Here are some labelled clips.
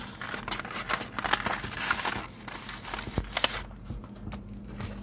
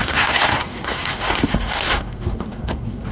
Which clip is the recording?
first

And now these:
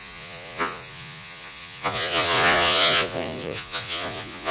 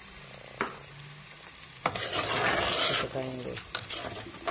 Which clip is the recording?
second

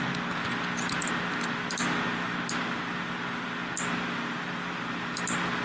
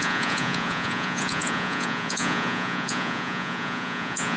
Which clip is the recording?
first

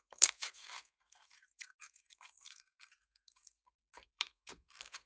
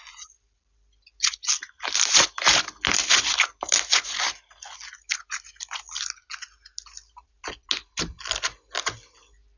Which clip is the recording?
second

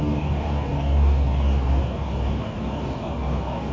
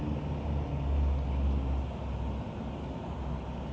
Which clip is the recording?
second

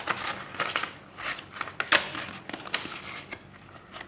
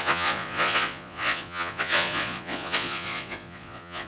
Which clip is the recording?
first